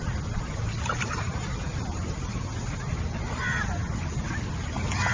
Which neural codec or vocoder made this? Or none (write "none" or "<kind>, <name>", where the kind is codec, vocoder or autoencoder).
none